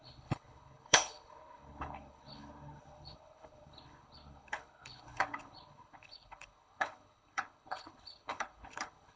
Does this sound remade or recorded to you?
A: remade